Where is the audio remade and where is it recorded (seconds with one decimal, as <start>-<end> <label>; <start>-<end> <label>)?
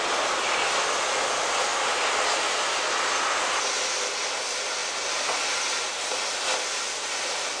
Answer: 0.0-7.6 recorded